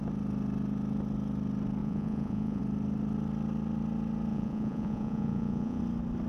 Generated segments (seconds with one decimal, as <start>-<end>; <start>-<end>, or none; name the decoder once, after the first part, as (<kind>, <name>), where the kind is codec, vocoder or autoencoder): 1.8-2.6 (vocoder, Vocos); 4.3-5.8